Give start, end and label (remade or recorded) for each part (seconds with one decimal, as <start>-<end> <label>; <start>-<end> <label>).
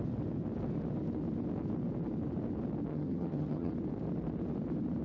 0.0-2.9 recorded; 2.9-3.7 remade; 3.7-5.0 recorded